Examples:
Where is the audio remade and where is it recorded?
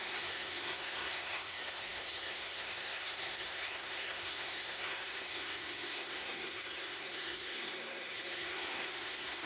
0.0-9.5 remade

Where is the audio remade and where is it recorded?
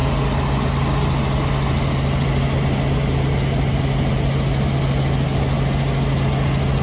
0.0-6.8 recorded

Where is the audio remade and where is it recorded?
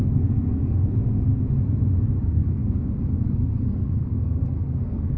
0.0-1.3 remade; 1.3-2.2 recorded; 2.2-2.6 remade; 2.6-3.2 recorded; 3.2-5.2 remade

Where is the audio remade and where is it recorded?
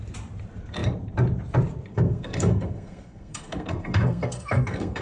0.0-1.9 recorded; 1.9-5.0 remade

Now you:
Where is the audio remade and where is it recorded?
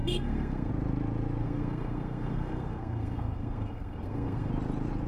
0.0-0.7 remade; 0.7-1.4 recorded; 1.4-4.5 remade; 4.5-5.1 recorded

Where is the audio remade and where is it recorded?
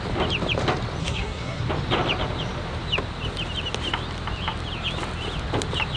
0.0-1.0 recorded; 1.0-1.6 remade; 1.6-6.0 recorded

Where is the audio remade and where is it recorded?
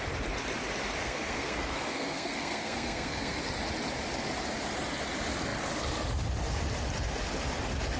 0.0-1.0 recorded; 1.0-3.4 remade; 3.4-8.0 recorded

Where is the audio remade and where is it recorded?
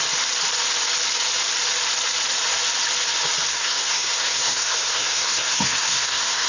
0.0-3.5 recorded; 3.5-6.5 remade